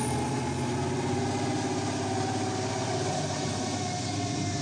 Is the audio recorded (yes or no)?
yes